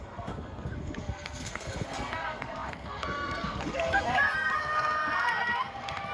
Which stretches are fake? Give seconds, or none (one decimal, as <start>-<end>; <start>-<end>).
0.0-6.1